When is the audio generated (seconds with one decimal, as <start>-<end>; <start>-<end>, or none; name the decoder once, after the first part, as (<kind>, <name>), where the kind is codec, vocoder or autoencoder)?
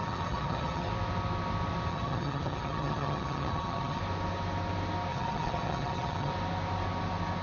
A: 0.0-0.9 (vocoder, HiFi-GAN); 1.9-4.0; 5.1-6.3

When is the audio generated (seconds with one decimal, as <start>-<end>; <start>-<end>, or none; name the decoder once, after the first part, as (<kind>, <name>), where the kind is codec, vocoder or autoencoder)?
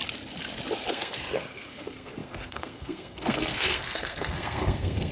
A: 0.9-5.1 (codec, SNAC)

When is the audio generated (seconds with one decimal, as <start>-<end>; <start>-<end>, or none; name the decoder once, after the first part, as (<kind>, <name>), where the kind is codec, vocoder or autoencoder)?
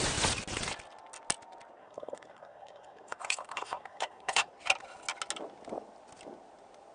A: 1.8-4.5 (codec, SNAC)